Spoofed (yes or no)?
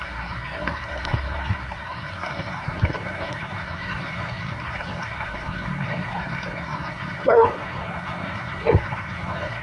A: yes